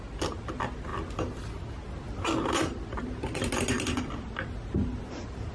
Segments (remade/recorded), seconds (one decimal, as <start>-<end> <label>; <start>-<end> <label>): 0.0-5.5 recorded